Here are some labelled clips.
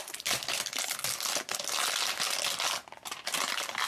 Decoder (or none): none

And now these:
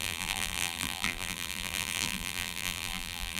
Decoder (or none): vocoder, BigVGAN v2